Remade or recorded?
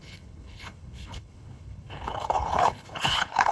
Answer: remade